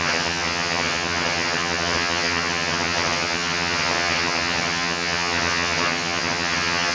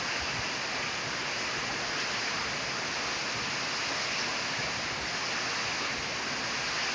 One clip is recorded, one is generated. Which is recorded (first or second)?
second